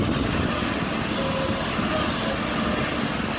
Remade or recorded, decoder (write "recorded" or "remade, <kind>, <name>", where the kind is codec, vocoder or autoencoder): recorded